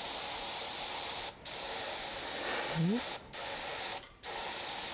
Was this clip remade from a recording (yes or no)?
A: no